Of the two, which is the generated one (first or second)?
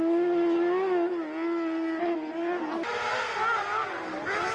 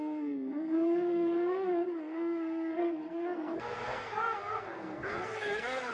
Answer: second